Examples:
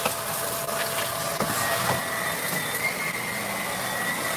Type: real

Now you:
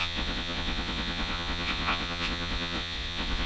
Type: fake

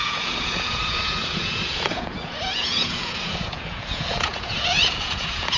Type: fake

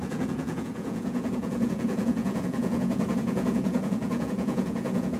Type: fake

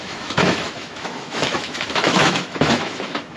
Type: fake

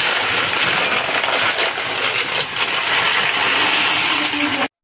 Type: real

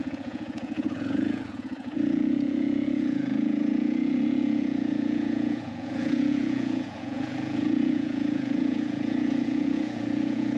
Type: fake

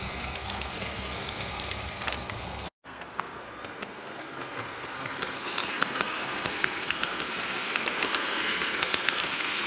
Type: fake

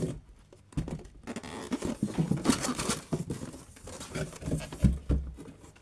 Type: real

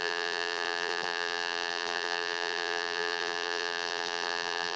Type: fake